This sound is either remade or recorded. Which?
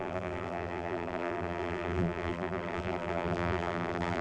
remade